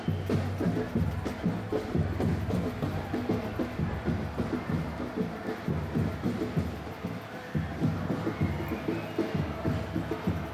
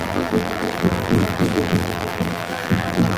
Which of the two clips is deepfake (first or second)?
second